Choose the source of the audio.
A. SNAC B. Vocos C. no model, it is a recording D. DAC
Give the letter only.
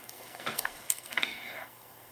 A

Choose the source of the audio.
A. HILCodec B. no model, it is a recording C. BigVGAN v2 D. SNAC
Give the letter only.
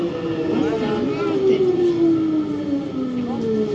B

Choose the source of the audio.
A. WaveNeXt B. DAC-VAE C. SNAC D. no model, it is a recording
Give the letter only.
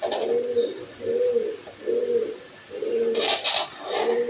D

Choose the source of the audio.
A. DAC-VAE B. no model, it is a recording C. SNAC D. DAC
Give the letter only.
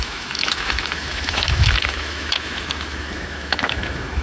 A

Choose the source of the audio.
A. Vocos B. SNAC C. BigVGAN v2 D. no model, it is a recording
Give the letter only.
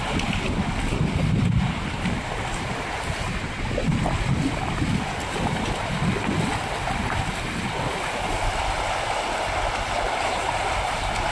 D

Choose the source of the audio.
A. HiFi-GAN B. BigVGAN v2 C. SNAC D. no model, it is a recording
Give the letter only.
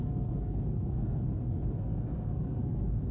C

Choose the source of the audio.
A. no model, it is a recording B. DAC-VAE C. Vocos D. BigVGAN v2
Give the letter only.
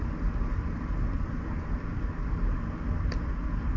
A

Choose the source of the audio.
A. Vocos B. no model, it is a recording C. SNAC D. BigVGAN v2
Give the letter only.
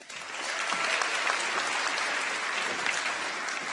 B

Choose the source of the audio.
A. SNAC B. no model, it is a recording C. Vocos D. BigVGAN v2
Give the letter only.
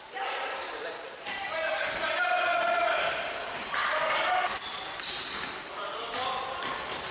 B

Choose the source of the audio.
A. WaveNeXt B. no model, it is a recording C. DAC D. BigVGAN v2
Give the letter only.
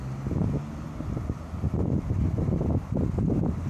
B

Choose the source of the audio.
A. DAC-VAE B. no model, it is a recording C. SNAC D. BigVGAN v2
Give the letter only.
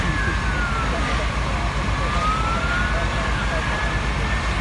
B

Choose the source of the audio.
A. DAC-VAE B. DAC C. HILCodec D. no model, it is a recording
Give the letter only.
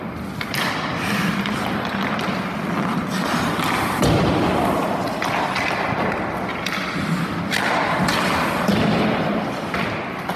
D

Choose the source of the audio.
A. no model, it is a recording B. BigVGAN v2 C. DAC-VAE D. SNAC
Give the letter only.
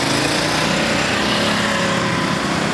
A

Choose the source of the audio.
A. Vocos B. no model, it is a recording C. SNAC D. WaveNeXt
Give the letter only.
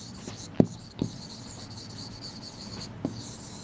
B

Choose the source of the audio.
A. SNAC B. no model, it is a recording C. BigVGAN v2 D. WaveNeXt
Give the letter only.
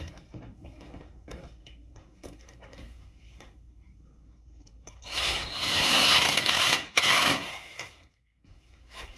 A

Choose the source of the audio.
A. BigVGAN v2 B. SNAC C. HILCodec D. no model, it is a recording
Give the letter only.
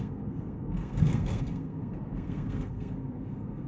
B